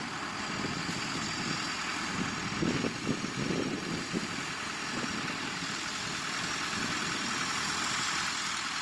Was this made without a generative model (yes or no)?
no